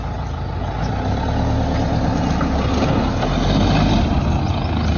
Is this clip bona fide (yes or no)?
yes